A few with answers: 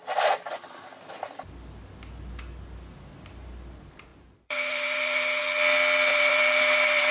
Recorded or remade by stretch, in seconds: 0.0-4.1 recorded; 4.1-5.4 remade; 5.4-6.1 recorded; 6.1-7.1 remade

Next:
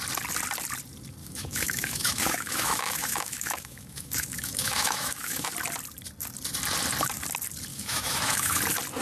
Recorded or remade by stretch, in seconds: 0.0-1.2 recorded; 1.2-5.5 remade; 5.5-7.7 recorded; 7.7-8.6 remade; 8.6-9.0 recorded

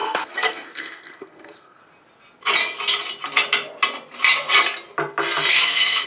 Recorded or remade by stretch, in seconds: 0.0-1.8 remade; 1.8-5.5 recorded; 5.5-6.1 remade

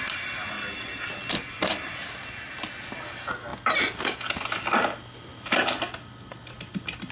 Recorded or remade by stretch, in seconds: 0.0-7.1 recorded

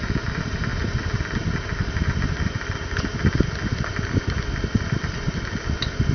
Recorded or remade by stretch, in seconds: 0.0-6.1 recorded